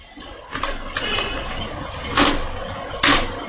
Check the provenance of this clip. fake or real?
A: real